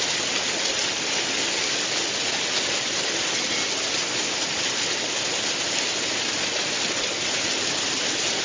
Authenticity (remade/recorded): recorded